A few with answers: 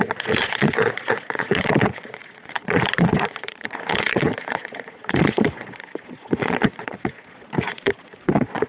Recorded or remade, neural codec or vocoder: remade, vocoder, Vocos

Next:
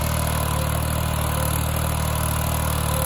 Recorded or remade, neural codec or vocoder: recorded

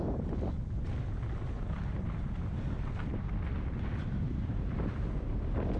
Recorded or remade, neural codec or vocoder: recorded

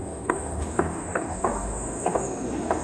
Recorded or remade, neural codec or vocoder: remade, codec, DAC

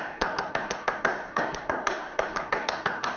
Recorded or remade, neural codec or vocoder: remade, codec, SNAC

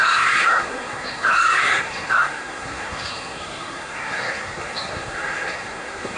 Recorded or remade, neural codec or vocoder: remade, codec, SNAC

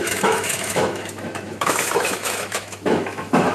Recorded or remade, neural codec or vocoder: remade, autoencoder, DAC-VAE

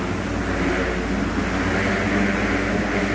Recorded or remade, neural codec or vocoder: recorded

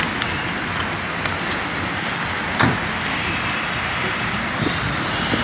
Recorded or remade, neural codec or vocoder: recorded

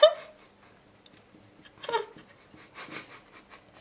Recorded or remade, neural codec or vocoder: recorded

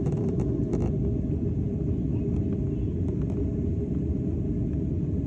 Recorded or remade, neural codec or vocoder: remade, vocoder, BigVGAN v2